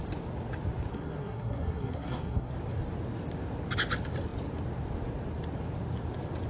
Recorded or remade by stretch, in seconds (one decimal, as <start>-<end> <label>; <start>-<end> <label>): 0.0-0.9 recorded; 0.9-2.5 remade; 2.5-6.5 recorded